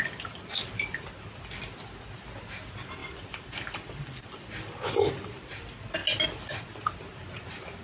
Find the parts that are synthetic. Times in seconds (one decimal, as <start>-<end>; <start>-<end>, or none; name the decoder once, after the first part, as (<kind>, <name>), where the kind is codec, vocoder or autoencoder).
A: 3.0-5.1 (vocoder, BigVGAN v2)